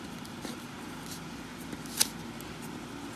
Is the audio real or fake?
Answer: real